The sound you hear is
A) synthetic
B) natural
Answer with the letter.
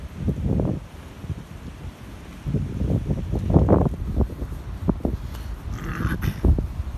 B